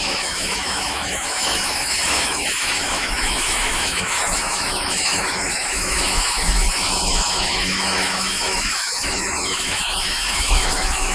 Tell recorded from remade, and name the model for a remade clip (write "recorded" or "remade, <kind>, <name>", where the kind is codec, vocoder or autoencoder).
remade, autoencoder, DAC-VAE